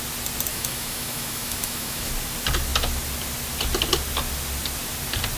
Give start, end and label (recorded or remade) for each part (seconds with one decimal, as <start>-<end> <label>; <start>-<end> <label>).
0.0-0.5 recorded; 0.5-2.1 remade; 2.1-5.4 recorded